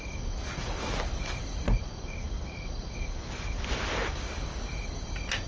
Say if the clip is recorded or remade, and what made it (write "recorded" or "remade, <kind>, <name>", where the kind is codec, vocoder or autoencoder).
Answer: recorded